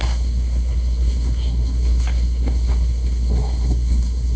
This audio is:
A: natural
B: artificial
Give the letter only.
B